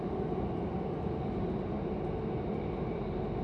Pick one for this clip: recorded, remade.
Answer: recorded